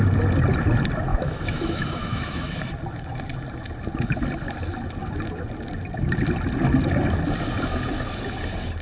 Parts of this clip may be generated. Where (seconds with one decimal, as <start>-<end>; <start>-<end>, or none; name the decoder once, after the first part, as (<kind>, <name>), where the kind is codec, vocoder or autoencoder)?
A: 1.1-2.6 (autoencoder, DAC-VAE)